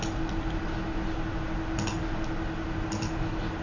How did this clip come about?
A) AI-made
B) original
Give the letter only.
B